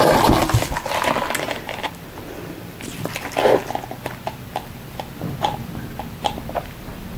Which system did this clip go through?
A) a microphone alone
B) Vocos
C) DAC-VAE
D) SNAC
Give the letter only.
A